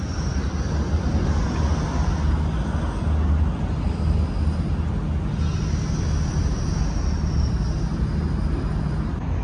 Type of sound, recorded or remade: recorded